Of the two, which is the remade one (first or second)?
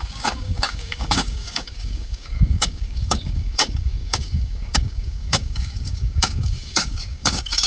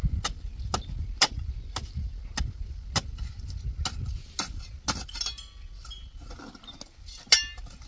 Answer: first